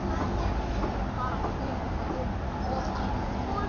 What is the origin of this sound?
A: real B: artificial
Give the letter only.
A